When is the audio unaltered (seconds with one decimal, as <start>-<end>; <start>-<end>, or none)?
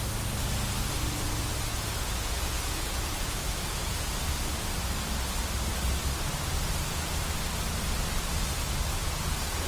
0.0-1.7; 4.1-9.0